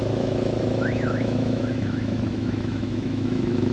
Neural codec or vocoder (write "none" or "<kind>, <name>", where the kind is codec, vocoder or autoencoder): autoencoder, DAC-VAE